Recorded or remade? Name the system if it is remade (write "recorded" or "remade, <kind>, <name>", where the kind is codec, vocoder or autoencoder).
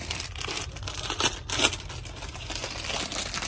recorded